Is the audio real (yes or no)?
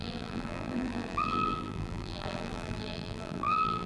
no